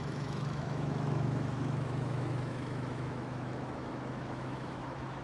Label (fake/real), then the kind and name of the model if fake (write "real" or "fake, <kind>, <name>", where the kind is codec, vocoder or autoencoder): fake, autoencoder, DAC-VAE